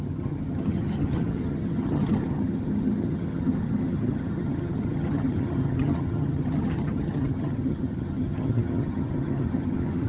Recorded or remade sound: remade